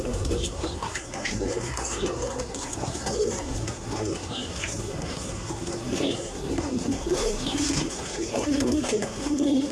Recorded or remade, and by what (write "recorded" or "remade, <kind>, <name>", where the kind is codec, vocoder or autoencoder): remade, codec, SNAC